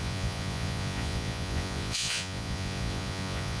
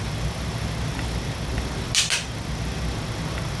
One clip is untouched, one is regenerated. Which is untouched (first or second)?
second